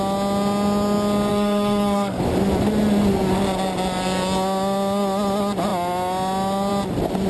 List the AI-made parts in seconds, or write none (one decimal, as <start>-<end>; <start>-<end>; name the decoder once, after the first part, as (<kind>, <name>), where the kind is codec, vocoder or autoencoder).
1.3-2.2 (codec, SNAC)